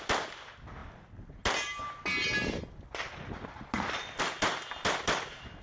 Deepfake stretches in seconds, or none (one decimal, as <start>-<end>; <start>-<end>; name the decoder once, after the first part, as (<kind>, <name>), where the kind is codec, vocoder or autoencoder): none

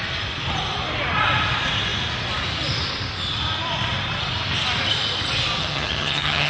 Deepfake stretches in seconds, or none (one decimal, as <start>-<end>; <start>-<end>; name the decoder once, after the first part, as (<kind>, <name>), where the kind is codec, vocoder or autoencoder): 5.6-6.5 (vocoder, HiFi-GAN)

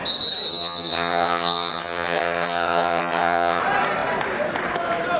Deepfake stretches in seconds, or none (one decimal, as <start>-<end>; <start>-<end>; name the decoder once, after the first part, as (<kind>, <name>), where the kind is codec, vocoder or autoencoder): 0.5-3.6 (vocoder, HiFi-GAN)

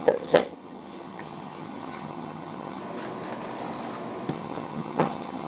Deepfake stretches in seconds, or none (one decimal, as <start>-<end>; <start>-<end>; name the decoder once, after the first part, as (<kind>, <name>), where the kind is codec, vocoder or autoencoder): 0.0-2.8 (vocoder, HiFi-GAN); 4.3-5.5

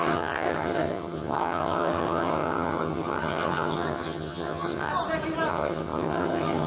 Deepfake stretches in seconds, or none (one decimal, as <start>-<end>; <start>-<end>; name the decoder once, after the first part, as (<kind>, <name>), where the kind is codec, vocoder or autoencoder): 0.0-4.9 (vocoder, HiFi-GAN); 5.5-6.7

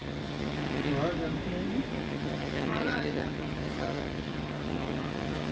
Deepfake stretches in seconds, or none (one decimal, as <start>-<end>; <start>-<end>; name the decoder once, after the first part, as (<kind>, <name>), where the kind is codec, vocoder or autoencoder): 0.0-0.9 (vocoder, HiFi-GAN); 1.9-5.5

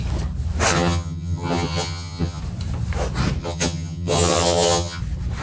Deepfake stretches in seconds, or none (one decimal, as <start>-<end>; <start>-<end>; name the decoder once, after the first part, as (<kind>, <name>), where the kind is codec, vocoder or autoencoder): 0.7-2.4 (vocoder, HiFi-GAN); 3.4-5.0

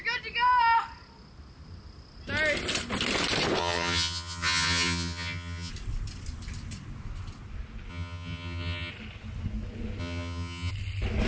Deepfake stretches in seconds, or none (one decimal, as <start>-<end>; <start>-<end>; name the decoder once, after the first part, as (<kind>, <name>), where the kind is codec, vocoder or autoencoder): 3.6-5.7 (vocoder, HiFi-GAN); 7.9-8.9; 10.0-10.7